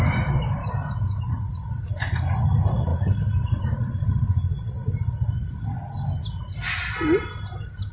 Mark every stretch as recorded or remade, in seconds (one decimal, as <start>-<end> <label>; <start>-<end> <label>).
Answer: 0.0-7.9 recorded